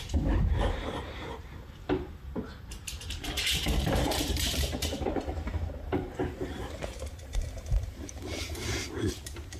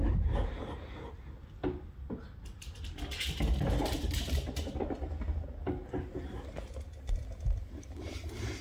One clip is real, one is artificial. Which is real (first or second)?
second